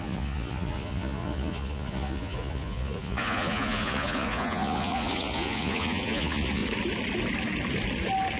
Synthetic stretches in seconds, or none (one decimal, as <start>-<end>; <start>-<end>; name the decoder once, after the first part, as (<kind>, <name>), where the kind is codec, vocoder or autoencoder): 0.0-6.6 (vocoder, Vocos)